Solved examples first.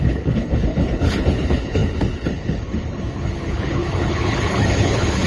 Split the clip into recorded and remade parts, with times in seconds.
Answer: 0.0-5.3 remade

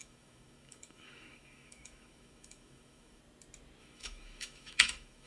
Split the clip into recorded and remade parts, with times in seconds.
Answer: 0.0-3.2 remade; 3.2-3.8 recorded; 3.8-5.3 remade

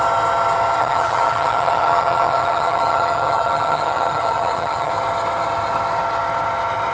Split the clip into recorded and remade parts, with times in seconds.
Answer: 0.0-0.8 recorded; 0.8-4.9 remade; 4.9-6.9 recorded

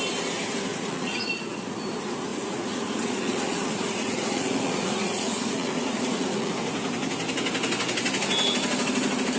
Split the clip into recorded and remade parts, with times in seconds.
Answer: 0.0-0.7 recorded; 0.7-1.8 remade; 1.8-2.3 recorded; 2.3-6.5 remade; 6.5-9.4 recorded

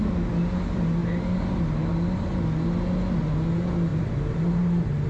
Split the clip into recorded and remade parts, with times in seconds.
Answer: 0.0-3.9 recorded; 3.9-5.1 remade

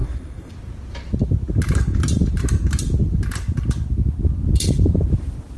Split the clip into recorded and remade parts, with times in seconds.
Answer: 0.0-0.5 remade; 0.5-5.6 recorded